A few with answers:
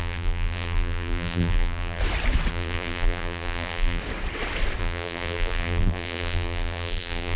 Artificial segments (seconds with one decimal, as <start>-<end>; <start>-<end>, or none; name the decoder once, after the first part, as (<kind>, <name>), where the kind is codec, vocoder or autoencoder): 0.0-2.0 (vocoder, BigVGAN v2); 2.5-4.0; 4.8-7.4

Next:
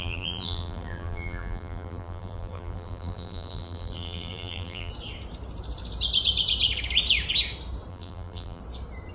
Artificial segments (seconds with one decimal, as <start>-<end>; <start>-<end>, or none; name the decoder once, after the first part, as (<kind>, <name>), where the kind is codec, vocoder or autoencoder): 0.0-4.9 (vocoder, BigVGAN v2); 7.9-8.6

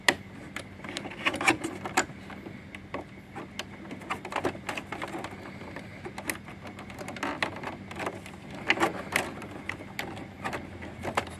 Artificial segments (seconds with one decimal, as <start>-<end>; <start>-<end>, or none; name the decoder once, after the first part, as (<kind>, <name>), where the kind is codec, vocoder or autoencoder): none